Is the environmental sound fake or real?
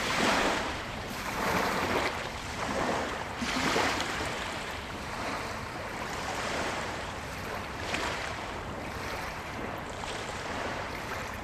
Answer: fake